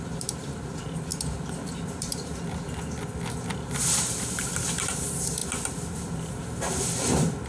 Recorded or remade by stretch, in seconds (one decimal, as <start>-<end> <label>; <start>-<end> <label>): 0.0-2.1 remade; 2.1-3.8 recorded; 3.8-7.5 remade